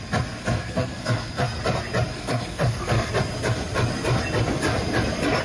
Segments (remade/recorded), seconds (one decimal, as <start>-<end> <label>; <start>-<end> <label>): 0.0-0.4 recorded; 0.4-1.6 remade; 1.6-2.1 recorded; 2.1-3.1 remade; 3.1-5.4 recorded